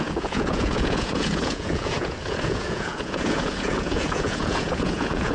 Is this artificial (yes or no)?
yes